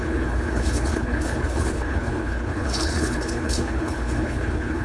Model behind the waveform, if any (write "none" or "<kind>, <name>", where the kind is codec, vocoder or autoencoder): codec, HILCodec